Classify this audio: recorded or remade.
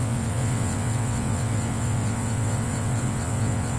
remade